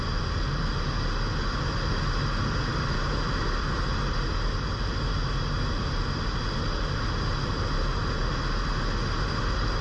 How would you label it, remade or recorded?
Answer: recorded